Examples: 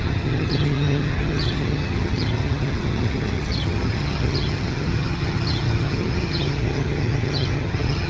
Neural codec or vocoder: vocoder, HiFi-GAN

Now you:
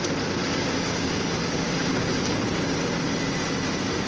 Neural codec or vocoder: none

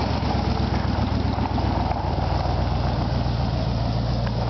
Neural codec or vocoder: none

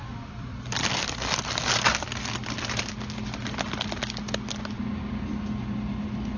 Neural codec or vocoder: none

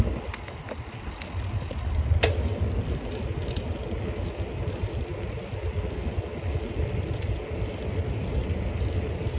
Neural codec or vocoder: none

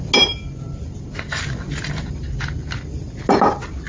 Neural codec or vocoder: none